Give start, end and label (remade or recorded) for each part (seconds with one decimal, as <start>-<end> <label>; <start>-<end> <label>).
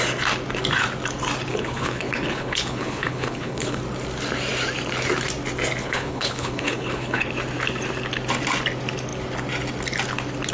0.0-1.5 recorded; 1.5-3.8 remade; 3.8-5.8 recorded; 5.8-7.3 remade; 7.3-10.5 recorded